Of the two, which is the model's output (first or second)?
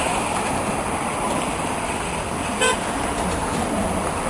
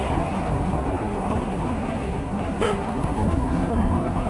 second